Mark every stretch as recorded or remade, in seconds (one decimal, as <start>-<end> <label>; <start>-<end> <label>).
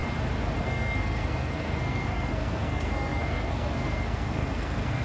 0.0-0.6 recorded; 0.6-5.0 remade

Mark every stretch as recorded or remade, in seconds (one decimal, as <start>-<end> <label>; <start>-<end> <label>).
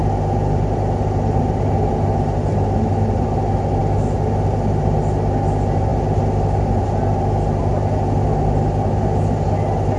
0.0-10.0 recorded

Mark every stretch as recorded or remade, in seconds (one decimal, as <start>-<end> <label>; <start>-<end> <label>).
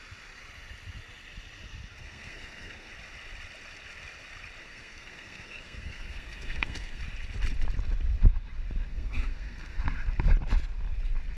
0.0-2.0 recorded; 2.0-2.9 remade; 2.9-4.6 recorded; 4.6-7.0 remade; 7.0-8.9 recorded; 8.9-9.8 remade; 9.8-11.4 recorded